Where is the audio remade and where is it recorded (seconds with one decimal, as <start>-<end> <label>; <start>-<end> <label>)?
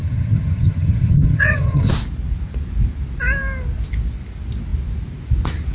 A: 0.0-1.9 remade; 1.9-5.7 recorded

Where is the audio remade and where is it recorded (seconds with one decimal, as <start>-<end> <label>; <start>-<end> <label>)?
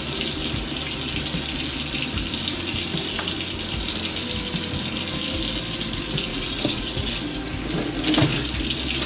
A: 0.0-6.3 recorded; 6.3-7.1 remade; 7.1-9.1 recorded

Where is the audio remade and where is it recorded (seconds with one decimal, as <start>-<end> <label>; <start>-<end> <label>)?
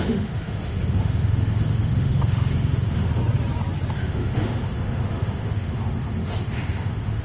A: 0.0-3.2 remade; 3.2-3.9 recorded; 3.9-7.2 remade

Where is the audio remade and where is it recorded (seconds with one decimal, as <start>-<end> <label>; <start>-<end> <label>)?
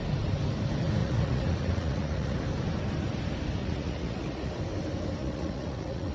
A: 0.0-1.0 recorded; 1.0-2.4 remade; 2.4-3.6 recorded; 3.6-4.5 remade; 4.5-5.2 recorded; 5.2-6.1 remade